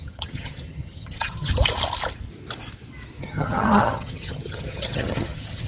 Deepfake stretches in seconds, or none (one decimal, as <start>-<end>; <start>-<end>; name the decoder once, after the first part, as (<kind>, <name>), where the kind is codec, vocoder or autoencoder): 0.0-1.5 (vocoder, HiFi-GAN); 3.2-5.7